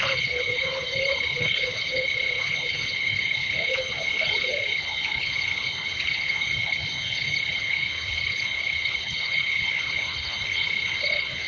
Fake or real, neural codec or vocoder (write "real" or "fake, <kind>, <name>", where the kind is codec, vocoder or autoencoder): fake, codec, HILCodec